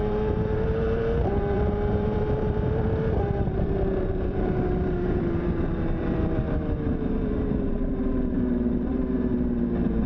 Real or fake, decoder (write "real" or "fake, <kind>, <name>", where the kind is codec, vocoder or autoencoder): fake, vocoder, BigVGAN v2